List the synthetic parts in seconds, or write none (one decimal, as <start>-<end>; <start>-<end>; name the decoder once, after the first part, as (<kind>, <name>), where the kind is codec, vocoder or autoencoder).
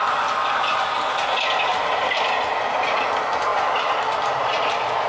1.7-2.3 (vocoder, BigVGAN v2); 3.5-5.1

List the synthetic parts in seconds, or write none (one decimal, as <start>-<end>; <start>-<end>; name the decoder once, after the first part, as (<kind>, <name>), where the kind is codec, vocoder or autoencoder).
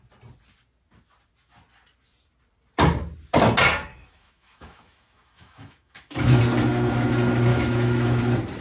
3.9-6.4 (autoencoder, DAC-VAE); 7.5-8.2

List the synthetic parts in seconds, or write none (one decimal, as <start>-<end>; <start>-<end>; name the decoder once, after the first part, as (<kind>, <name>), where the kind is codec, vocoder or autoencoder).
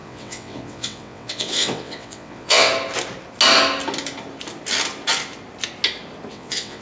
0.0-2.7 (vocoder, WaveNeXt); 6.3-6.8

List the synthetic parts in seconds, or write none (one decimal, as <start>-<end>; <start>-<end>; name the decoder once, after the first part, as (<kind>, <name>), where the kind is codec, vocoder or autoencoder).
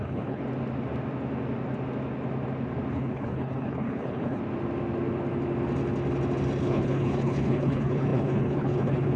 0.0-0.4 (codec, HILCodec); 2.9-4.4; 6.6-9.2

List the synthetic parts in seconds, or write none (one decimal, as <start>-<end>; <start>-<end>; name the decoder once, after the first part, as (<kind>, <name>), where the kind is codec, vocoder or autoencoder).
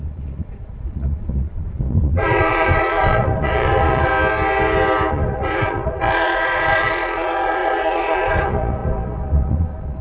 0.0-4.1 (vocoder, Vocos); 5.1-10.0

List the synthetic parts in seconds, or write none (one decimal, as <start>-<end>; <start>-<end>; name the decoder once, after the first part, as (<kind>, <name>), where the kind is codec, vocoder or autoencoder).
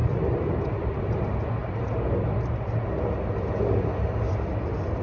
0.0-1.0 (vocoder, BigVGAN v2)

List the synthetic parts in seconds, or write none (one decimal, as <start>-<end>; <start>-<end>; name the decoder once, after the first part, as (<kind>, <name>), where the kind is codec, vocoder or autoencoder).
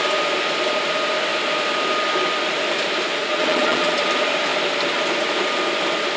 3.2-4.0 (vocoder, Vocos)